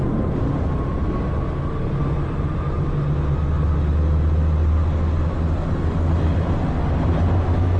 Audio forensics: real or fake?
real